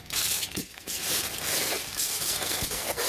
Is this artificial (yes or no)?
yes